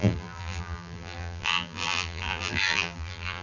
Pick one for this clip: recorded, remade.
remade